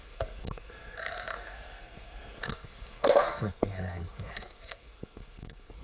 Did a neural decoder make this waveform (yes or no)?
yes